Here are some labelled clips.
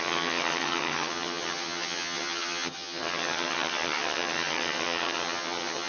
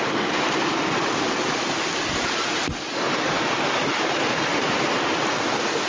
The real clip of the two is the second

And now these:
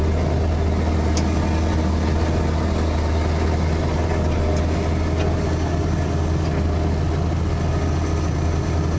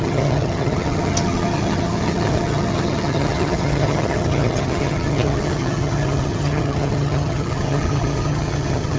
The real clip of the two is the first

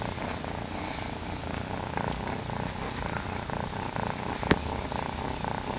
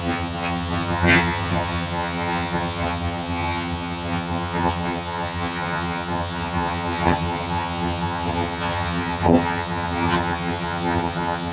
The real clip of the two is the first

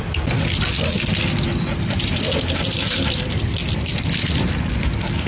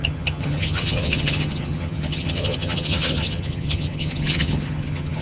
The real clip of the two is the first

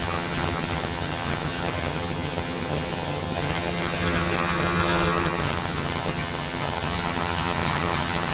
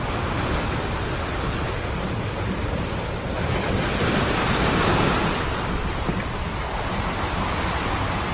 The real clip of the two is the second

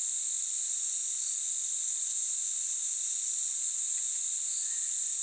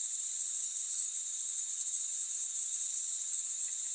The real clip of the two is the first